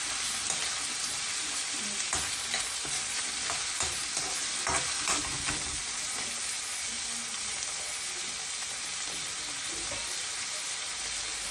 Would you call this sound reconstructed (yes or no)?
no